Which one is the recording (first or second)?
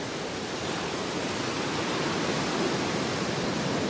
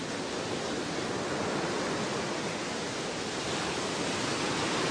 second